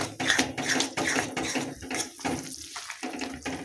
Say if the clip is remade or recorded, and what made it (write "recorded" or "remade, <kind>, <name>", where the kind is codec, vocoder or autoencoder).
recorded